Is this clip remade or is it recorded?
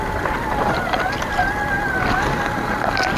recorded